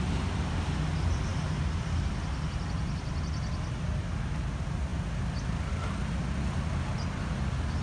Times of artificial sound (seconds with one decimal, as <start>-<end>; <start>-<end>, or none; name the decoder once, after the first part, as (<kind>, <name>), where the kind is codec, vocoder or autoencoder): none